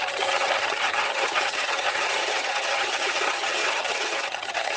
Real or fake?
fake